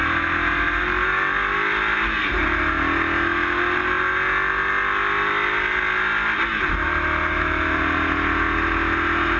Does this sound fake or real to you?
real